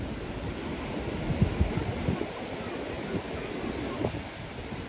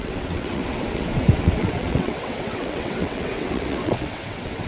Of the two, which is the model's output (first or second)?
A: second